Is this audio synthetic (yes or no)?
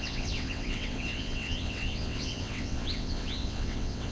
yes